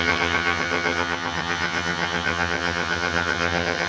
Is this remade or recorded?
remade